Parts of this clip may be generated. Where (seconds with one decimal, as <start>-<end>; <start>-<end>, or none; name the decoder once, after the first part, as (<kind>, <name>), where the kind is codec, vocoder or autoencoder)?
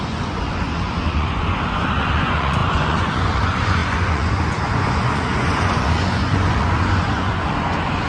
0.0-8.1 (vocoder, Vocos)